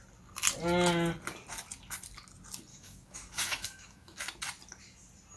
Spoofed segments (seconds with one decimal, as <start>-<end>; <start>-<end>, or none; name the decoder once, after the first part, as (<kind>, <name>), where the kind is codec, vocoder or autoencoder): 2.7-4.2 (autoencoder, DAC-VAE)